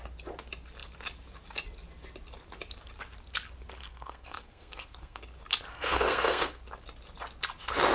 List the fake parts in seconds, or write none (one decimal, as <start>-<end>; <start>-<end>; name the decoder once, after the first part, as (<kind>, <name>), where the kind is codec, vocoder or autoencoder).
3.8-5.2 (codec, SNAC); 5.7-6.6